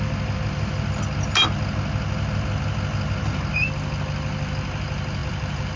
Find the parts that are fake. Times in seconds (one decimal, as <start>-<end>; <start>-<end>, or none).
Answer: none